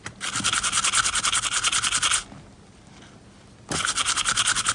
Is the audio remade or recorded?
recorded